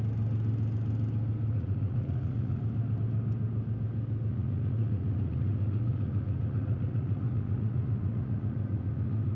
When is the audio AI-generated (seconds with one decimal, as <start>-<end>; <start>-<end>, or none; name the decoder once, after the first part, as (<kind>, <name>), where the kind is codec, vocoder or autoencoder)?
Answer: 1.5-2.6 (vocoder, Vocos); 4.3-9.3